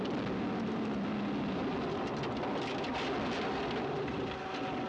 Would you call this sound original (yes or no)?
yes